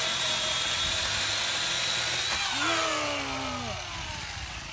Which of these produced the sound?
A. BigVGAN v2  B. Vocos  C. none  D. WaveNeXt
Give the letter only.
C